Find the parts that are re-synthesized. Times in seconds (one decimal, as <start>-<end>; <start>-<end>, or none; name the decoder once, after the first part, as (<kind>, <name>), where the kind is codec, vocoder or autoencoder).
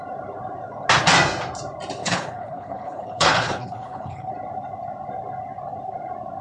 2.0-4.3 (codec, HILCodec)